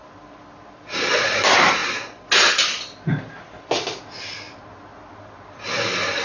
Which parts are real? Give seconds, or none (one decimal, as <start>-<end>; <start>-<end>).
0.0-6.2